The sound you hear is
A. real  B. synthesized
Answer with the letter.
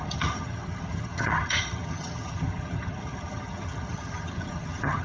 B